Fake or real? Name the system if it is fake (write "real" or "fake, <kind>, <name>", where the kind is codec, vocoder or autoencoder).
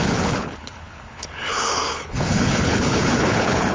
fake, codec, HILCodec